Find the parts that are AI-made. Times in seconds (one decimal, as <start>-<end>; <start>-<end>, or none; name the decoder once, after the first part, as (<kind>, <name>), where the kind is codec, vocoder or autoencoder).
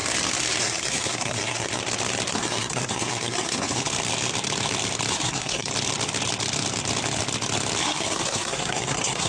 0.6-1.8 (codec, SNAC); 2.3-3.8; 5.1-5.7; 7.8-9.3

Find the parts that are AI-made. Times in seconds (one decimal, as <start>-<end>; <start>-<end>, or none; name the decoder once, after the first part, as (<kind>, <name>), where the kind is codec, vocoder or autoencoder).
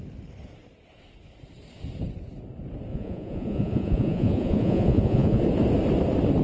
2.9-5.4 (vocoder, Vocos)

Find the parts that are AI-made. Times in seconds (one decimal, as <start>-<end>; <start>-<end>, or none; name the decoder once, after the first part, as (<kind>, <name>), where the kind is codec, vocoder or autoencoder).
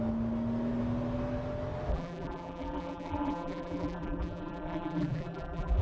1.9-5.8 (vocoder, BigVGAN v2)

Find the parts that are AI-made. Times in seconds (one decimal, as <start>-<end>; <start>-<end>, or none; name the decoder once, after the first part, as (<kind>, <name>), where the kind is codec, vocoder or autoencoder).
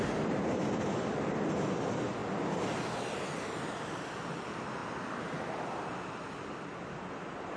none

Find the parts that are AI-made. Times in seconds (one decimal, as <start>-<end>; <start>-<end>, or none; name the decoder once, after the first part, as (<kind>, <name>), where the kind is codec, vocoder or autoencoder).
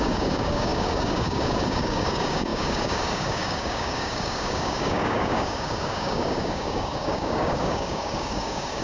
0.0-8.8 (codec, DAC)